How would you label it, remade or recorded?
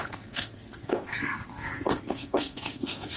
remade